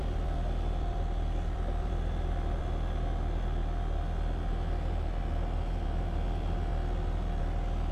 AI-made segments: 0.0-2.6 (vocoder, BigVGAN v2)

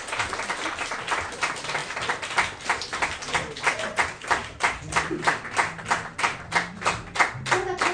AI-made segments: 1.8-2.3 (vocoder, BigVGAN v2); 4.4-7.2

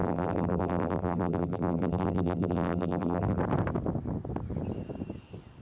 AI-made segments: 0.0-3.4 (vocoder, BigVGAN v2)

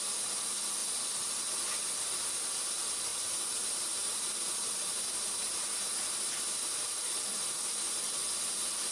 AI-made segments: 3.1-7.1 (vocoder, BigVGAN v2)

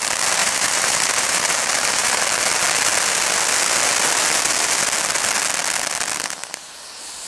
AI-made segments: 0.4-2.2 (vocoder, BigVGAN v2)

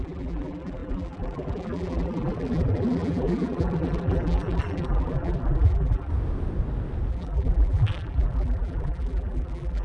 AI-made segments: 0.0-6.1 (vocoder, BigVGAN v2); 7.1-9.8

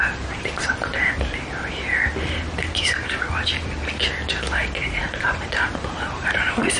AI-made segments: 0.0-0.9 (vocoder, BigVGAN v2); 5.0-6.8